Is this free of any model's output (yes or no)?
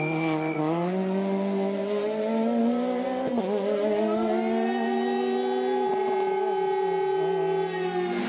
yes